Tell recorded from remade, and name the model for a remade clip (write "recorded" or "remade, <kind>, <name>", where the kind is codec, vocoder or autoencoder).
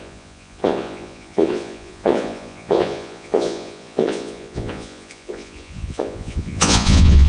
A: remade, vocoder, Vocos